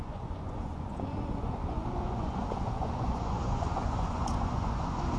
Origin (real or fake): fake